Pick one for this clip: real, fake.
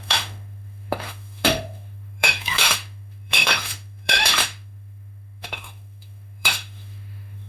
fake